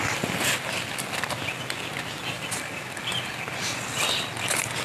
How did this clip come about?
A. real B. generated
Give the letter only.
A